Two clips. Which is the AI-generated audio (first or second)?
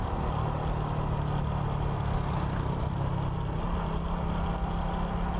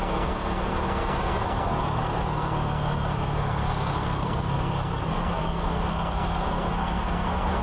second